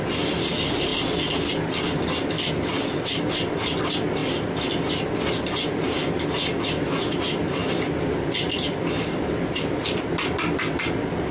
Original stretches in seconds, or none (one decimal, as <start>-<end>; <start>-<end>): 0.0-11.3